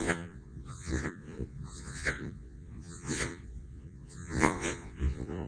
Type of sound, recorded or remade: remade